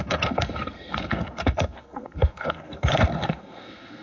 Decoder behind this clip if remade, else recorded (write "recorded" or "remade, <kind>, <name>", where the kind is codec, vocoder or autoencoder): remade, codec, SNAC